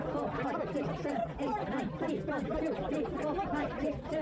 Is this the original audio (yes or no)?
yes